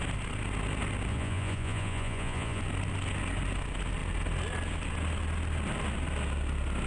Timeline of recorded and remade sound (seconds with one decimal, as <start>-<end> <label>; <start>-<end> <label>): 0.0-1.1 recorded; 1.1-2.6 remade; 2.6-6.9 recorded